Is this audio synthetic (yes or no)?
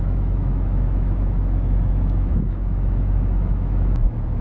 yes